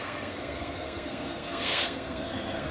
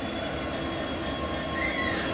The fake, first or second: first